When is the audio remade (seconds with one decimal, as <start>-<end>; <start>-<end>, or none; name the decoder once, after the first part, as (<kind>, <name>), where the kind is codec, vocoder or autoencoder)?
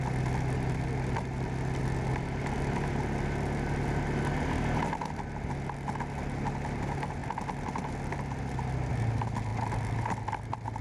none